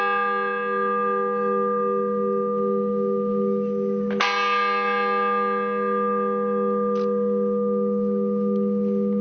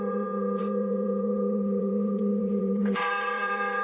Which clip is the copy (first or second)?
second